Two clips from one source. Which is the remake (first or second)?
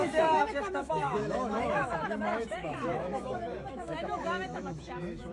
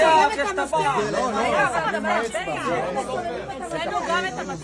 first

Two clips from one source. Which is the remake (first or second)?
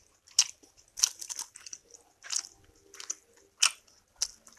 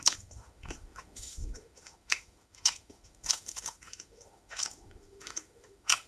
second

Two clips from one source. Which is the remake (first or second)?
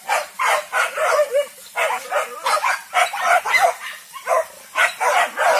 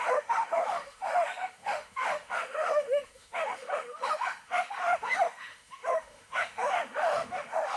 second